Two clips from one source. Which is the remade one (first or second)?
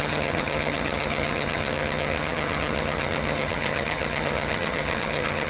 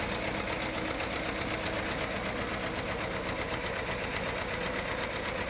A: first